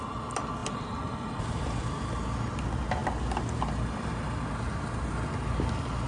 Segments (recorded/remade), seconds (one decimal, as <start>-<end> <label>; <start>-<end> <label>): 0.0-6.1 recorded